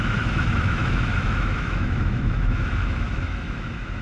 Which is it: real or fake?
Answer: fake